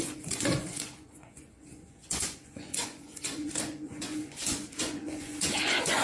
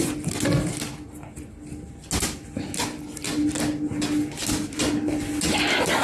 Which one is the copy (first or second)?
first